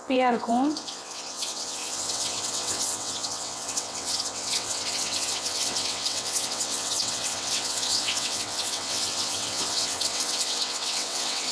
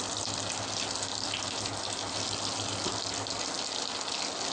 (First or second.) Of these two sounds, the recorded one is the second